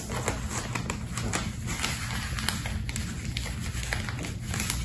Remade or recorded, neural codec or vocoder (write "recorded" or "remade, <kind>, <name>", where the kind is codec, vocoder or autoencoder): recorded